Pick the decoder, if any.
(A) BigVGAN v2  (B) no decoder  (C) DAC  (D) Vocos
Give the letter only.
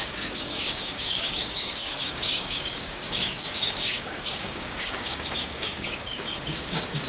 C